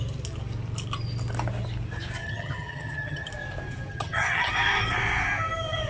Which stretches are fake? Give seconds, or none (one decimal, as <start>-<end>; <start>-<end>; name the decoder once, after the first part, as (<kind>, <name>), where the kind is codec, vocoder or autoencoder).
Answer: 2.2-3.3 (vocoder, HiFi-GAN); 3.9-4.5